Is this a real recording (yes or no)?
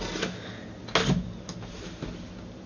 yes